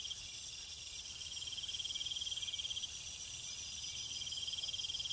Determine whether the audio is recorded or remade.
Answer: recorded